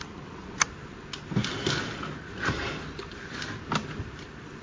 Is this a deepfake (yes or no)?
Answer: no